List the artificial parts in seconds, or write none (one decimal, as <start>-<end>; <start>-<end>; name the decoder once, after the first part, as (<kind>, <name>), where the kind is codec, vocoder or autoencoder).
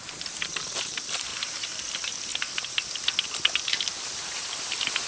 0.0-2.3 (vocoder, BigVGAN v2); 4.0-5.1